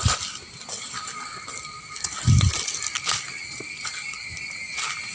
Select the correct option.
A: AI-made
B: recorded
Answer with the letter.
B